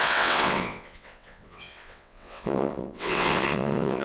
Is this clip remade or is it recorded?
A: remade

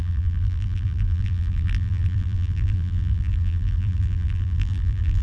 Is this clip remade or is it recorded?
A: remade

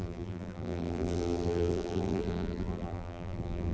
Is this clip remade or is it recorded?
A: remade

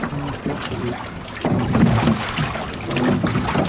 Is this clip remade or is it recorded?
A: recorded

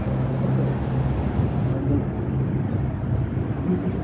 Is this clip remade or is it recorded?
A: recorded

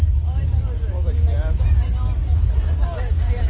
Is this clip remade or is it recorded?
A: recorded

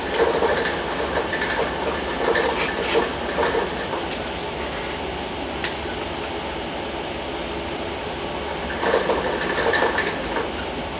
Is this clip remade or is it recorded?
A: recorded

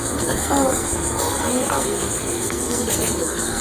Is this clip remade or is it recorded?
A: remade